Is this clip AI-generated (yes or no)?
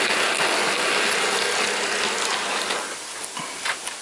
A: no